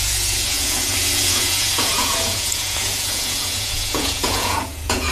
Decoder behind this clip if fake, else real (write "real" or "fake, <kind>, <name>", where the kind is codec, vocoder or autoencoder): fake, vocoder, Vocos